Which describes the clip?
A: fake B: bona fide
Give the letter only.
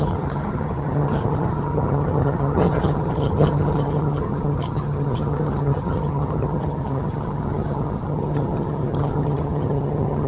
A